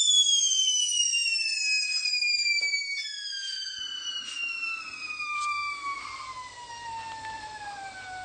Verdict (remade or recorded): recorded